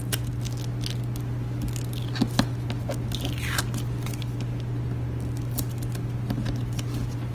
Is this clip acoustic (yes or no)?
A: yes